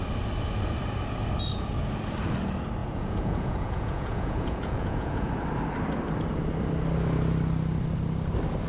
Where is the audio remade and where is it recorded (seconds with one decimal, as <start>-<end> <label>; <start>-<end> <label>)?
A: 0.0-2.8 recorded; 2.8-5.3 remade; 5.3-8.7 recorded